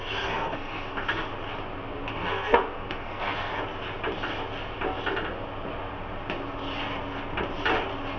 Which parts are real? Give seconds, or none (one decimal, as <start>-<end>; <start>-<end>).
1.3-2.1; 3.5-8.2